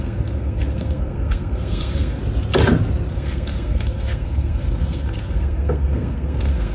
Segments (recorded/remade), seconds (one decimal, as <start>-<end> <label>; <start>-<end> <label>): 0.0-2.2 remade; 2.2-3.1 recorded; 3.1-6.7 remade